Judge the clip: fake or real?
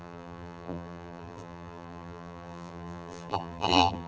fake